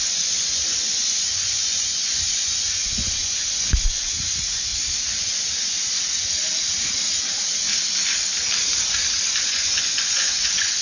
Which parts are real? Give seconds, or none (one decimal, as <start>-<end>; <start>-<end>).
4.7-9.4